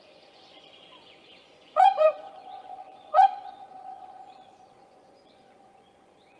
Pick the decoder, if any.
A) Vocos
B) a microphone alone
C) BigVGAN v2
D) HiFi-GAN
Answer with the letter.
A